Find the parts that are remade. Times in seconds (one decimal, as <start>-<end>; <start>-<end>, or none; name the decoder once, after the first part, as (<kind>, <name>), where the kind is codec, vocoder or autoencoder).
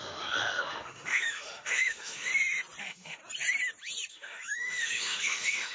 0.0-2.3 (autoencoder, DAC-VAE); 2.8-3.2; 4.1-5.7